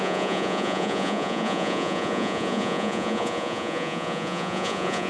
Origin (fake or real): fake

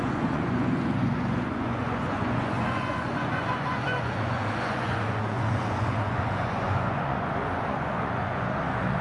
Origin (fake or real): fake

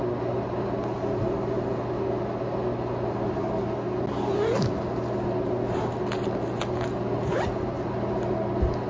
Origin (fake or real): real